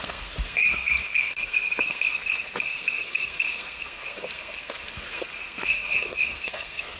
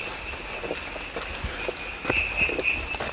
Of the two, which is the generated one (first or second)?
first